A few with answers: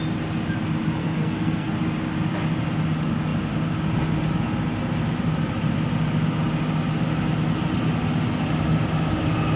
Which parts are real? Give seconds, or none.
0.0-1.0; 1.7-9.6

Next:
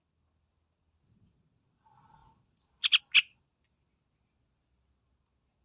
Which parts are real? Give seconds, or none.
0.0-5.6

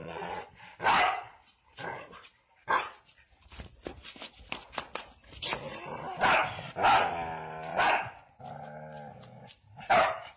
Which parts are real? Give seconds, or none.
0.5-7.7; 8.4-10.4

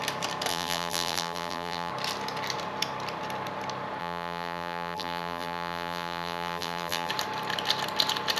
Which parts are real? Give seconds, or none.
0.0-0.5; 1.9-4.0; 7.1-8.4

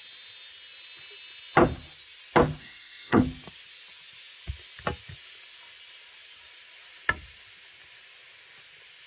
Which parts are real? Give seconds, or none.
0.0-2.6; 3.2-9.1

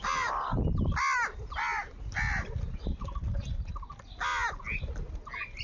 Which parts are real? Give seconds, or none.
0.0-5.6

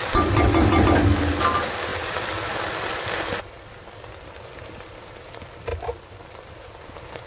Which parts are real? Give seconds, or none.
0.0-5.7; 6.7-7.3

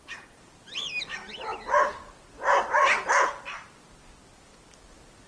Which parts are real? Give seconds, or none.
0.0-5.3